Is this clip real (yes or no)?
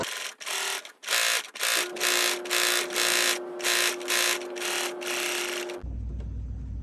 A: yes